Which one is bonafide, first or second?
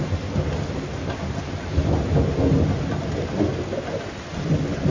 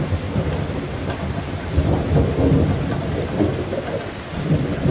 first